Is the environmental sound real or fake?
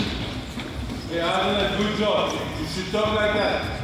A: real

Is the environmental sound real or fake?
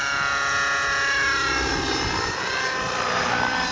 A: real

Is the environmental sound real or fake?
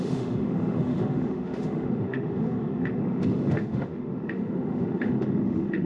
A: fake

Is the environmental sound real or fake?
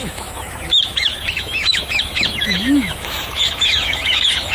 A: fake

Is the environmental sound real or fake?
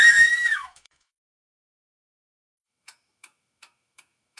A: fake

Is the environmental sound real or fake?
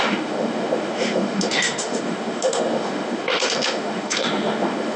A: fake